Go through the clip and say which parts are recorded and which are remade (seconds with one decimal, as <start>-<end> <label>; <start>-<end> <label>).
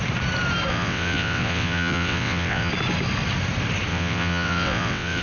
0.0-0.7 recorded; 0.7-2.7 remade; 2.7-3.9 recorded; 3.9-5.2 remade